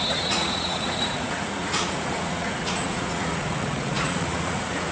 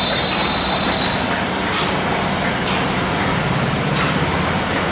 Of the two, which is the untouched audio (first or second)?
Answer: second